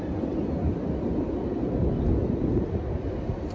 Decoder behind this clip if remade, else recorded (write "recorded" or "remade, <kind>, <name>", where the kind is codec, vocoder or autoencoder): recorded